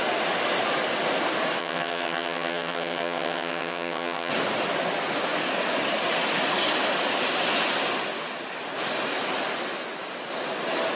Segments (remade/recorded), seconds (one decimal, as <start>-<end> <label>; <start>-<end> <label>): 0.0-1.6 recorded; 1.6-4.3 remade; 4.3-11.0 recorded